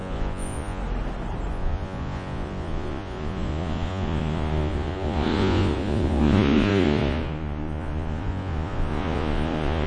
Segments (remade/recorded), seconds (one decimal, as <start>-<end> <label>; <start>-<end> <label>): 0.0-0.8 remade; 0.8-1.5 recorded; 1.5-9.9 remade